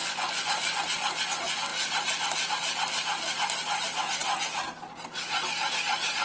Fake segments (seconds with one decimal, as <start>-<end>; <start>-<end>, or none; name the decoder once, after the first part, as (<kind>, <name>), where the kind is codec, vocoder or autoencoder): 0.0-0.8 (vocoder, Vocos)